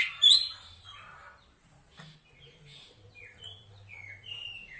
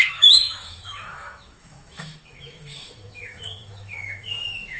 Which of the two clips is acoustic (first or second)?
first